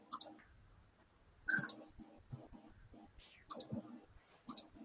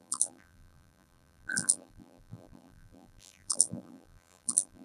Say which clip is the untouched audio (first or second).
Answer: first